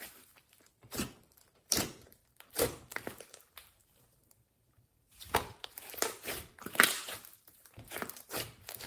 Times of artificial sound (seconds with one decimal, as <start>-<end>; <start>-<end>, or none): 0.0-2.2; 3.2-8.9